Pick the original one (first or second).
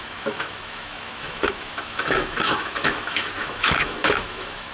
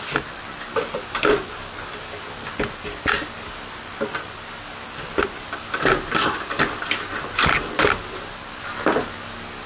second